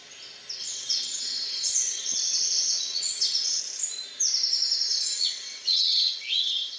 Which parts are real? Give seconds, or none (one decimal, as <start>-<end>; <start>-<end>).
0.0-0.6; 3.6-4.9